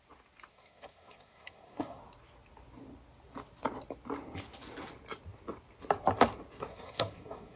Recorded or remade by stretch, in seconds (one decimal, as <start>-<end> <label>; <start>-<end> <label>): 0.0-0.5 recorded; 0.5-2.0 remade; 2.0-6.7 recorded; 6.7-7.6 remade

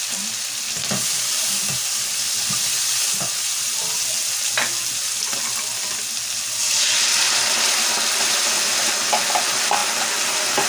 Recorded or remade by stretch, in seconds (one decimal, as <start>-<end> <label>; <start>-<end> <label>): 0.0-10.7 recorded